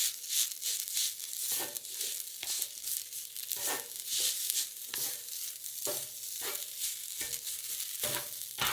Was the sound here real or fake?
real